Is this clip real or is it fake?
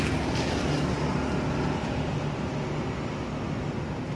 real